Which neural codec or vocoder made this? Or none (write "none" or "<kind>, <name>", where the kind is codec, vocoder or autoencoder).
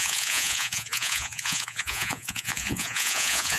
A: vocoder, Vocos